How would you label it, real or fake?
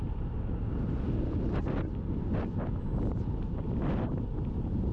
real